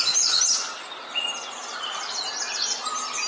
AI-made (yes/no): no